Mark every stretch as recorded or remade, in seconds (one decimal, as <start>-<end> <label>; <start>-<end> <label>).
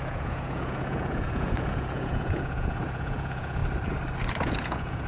0.0-3.6 remade; 3.6-4.3 recorded; 4.3-5.1 remade